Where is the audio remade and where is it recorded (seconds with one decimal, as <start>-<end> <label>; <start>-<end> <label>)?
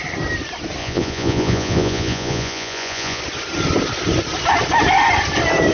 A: 0.0-0.8 recorded; 0.8-3.2 remade; 3.2-5.7 recorded